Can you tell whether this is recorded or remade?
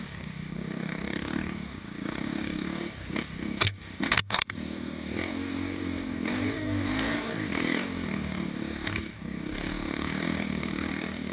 remade